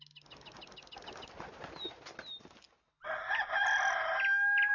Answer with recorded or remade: recorded